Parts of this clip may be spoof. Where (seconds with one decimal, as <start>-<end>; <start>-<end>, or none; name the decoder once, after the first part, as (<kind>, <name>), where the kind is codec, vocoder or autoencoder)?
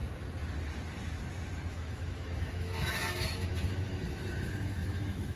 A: 1.7-5.4 (autoencoder, DAC-VAE)